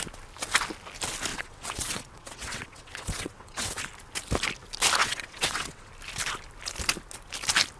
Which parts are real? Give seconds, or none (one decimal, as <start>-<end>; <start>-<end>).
0.0-1.3; 3.8-5.0; 5.9-7.8

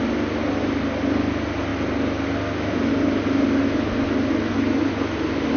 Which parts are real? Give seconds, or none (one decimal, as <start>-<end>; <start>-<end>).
0.0-5.6